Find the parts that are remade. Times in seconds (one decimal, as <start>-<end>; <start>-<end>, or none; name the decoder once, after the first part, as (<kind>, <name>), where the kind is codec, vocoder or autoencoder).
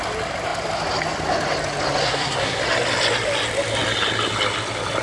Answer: 2.0-2.6 (codec, SNAC)